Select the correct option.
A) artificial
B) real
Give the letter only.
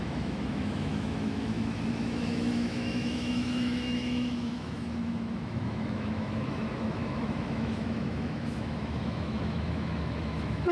A